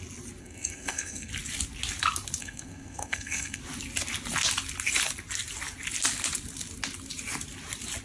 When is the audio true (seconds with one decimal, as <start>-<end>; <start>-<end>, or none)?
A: 0.0-0.4; 1.3-2.4; 3.6-8.0